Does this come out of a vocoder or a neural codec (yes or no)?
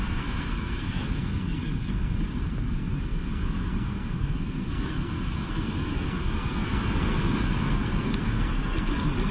yes